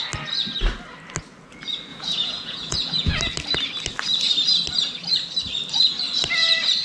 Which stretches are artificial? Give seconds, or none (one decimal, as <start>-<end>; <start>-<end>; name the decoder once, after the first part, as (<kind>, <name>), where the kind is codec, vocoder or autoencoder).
1.9-3.2 (vocoder, Vocos)